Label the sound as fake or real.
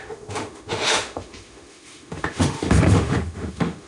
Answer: fake